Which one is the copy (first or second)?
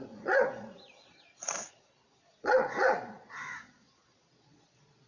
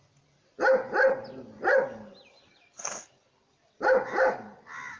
first